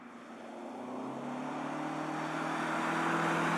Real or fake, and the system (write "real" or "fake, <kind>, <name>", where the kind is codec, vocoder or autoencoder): real